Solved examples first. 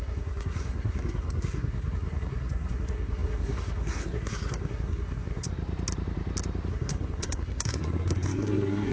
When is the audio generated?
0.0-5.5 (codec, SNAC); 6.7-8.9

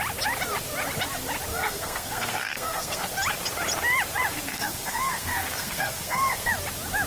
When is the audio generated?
1.5-3.1 (codec, SNAC); 4.5-6.5

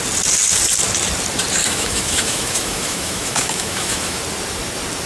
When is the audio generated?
1.6-4.2 (autoencoder, DAC-VAE)